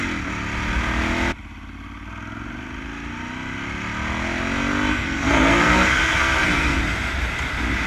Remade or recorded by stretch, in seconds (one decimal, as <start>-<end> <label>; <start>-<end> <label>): 0.0-4.9 recorded; 4.9-6.8 remade; 6.8-7.9 recorded

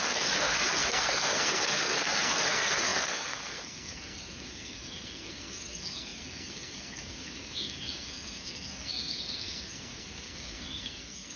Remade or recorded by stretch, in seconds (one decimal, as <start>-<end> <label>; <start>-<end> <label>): 0.0-11.4 remade

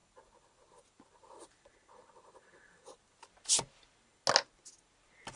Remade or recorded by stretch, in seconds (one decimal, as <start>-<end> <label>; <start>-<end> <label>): 0.0-5.4 recorded

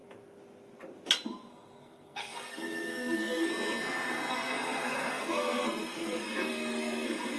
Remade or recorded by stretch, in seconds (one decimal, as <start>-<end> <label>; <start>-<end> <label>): 0.0-1.5 recorded; 1.5-3.5 remade; 3.5-4.3 recorded; 4.3-7.4 remade

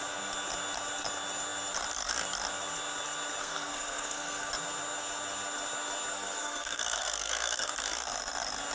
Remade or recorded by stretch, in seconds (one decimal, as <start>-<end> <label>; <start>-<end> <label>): 0.0-3.4 recorded; 3.4-4.5 remade; 4.5-6.1 recorded; 6.1-7.7 remade; 7.7-8.7 recorded

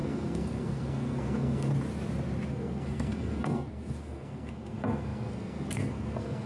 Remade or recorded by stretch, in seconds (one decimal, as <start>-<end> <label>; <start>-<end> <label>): 0.0-1.7 remade; 1.7-2.5 recorded; 2.5-6.5 remade